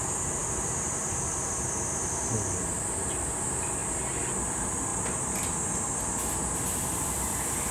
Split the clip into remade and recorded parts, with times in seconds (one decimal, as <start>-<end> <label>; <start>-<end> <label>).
0.0-3.8 remade; 3.8-4.4 recorded; 4.4-4.9 remade; 4.9-6.3 recorded; 6.3-7.7 remade